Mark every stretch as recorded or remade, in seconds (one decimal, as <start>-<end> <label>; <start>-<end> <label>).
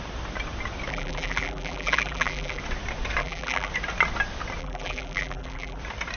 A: 0.0-0.9 recorded; 0.9-2.6 remade; 2.6-3.2 recorded; 3.2-3.7 remade; 3.7-4.6 recorded; 4.6-5.8 remade; 5.8-6.2 recorded